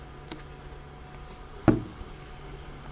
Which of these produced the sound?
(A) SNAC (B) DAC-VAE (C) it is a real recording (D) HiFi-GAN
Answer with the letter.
C